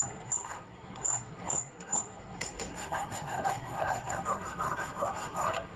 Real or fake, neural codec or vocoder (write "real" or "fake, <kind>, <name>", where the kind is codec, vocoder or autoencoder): fake, codec, SNAC